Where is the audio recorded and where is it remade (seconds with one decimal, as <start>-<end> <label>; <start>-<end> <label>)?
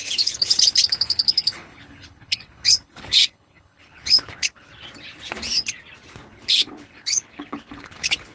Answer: 0.0-4.7 remade; 4.7-6.1 recorded; 6.1-8.3 remade